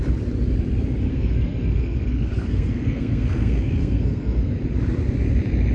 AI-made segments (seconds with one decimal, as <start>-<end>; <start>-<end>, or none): 1.1-4.5